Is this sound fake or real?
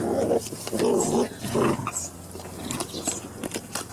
real